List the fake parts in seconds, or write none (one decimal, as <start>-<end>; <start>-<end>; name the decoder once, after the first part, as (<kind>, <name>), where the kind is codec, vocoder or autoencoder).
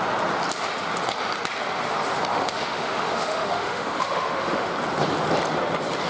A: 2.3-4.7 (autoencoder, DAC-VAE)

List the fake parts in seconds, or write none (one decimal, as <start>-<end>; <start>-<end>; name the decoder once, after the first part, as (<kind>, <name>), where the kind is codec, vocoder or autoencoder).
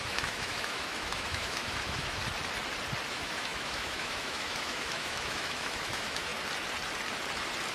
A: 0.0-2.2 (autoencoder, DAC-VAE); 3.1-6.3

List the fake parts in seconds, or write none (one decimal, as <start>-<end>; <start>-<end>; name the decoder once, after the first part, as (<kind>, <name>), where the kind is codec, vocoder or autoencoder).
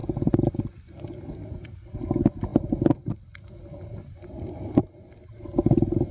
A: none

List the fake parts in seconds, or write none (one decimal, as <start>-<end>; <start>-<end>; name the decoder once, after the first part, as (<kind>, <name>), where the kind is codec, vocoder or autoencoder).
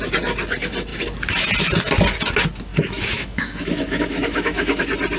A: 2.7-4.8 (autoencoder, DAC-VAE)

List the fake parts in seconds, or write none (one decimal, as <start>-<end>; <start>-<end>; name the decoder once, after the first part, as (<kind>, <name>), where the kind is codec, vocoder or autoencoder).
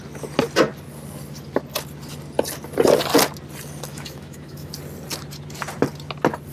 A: 3.9-4.7 (autoencoder, DAC-VAE)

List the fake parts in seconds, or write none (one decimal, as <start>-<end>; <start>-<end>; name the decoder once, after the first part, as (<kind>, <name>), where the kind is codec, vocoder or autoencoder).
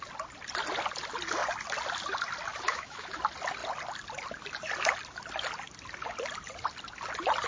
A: 2.5-3.2 (autoencoder, DAC-VAE)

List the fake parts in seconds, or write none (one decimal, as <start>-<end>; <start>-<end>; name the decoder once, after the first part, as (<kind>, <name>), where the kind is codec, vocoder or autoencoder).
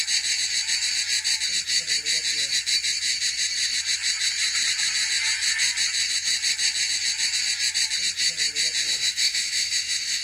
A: 8.8-10.2 (autoencoder, DAC-VAE)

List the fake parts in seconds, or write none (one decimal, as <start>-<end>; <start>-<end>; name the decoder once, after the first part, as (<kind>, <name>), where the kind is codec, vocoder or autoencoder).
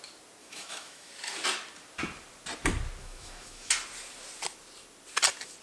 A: 0.4-1.1 (autoencoder, DAC-VAE); 3.0-3.7